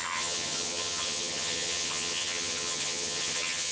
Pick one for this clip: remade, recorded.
remade